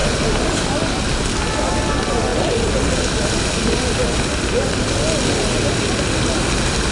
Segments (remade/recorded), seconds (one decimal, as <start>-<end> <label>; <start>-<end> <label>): 0.0-6.9 recorded